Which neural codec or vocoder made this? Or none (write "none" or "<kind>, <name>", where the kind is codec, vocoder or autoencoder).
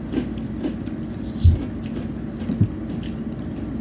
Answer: none